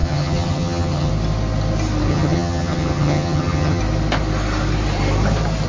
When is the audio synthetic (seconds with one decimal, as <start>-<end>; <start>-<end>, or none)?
0.0-1.1; 2.1-3.8

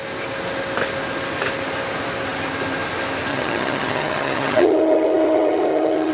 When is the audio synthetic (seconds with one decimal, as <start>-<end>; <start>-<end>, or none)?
3.3-6.1